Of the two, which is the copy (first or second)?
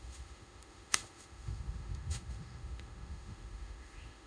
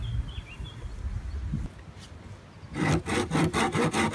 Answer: first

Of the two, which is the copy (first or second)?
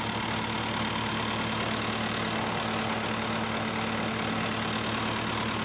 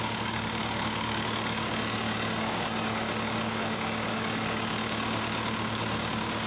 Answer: second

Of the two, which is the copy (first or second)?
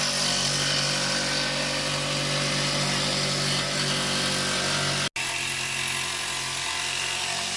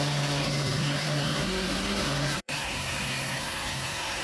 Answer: second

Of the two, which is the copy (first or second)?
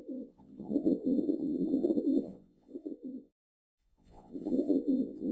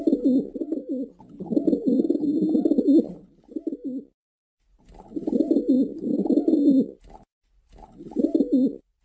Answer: first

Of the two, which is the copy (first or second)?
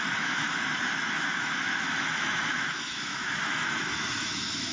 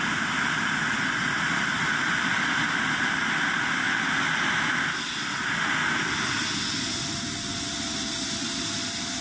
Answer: first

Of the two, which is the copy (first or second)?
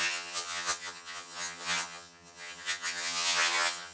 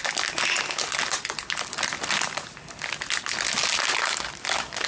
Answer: first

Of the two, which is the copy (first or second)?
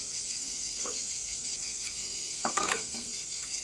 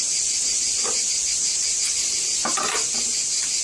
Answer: first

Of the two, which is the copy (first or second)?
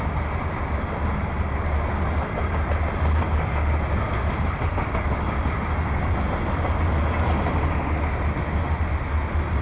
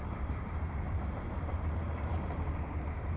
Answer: second